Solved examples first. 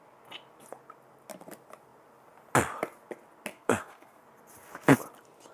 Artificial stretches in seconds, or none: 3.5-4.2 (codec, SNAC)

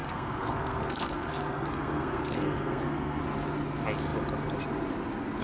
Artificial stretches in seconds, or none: 0.0-3.2 (codec, SNAC)

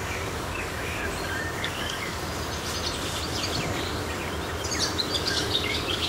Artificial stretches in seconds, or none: 0.0-1.0 (codec, DAC); 1.6-2.2; 5.2-6.1

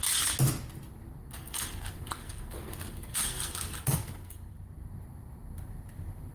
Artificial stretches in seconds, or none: 1.2-4.5 (codec, SNAC)